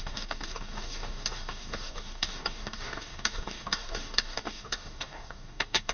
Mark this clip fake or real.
fake